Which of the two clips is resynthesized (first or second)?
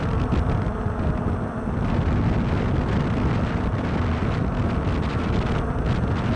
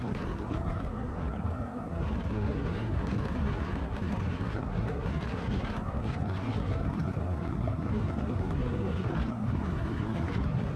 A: second